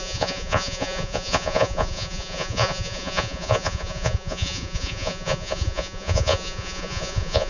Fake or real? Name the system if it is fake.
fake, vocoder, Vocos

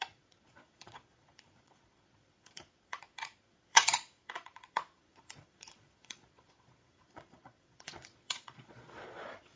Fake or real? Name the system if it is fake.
fake, vocoder, Vocos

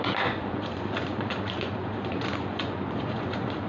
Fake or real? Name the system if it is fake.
fake, vocoder, Vocos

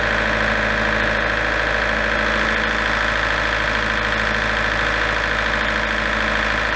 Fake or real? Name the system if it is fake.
real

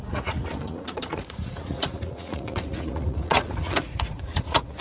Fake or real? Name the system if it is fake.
fake, vocoder, Vocos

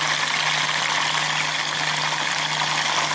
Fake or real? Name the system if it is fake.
real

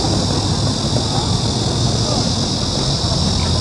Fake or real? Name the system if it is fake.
real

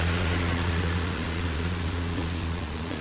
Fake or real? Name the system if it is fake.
fake, vocoder, Vocos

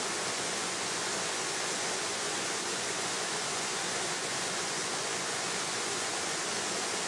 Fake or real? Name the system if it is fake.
fake, vocoder, Vocos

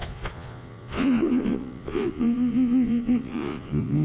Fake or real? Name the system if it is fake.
fake, vocoder, Vocos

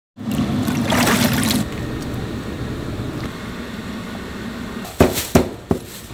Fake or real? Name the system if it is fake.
real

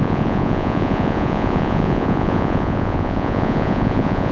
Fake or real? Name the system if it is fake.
fake, vocoder, Vocos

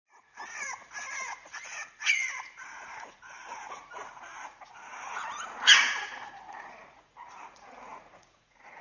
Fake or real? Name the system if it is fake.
fake, vocoder, Vocos